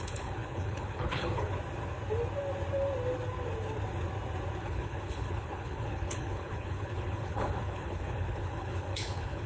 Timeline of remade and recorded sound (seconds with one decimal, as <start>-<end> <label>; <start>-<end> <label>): 0.0-1.5 remade; 1.5-4.6 recorded; 4.6-9.5 remade